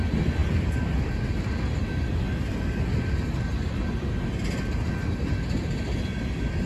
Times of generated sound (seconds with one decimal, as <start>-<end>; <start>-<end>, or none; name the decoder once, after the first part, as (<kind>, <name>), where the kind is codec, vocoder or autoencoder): none

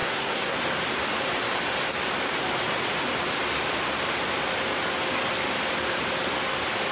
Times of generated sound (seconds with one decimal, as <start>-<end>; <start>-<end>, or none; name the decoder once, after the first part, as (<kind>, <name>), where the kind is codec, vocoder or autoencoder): 0.0-0.6 (codec, SNAC)

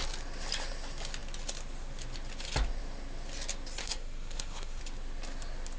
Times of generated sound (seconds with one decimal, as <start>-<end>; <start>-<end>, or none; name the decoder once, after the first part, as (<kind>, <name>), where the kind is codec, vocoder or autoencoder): 3.8-4.8 (codec, SNAC)

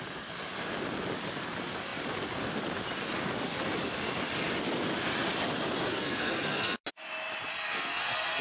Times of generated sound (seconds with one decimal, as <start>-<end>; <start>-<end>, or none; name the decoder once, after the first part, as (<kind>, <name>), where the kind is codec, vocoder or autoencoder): 5.9-6.8 (codec, SNAC); 7.5-8.4